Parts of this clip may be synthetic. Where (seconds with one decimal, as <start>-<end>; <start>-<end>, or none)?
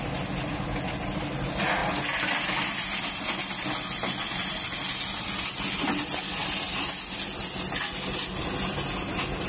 none